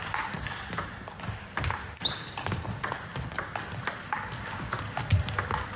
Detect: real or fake real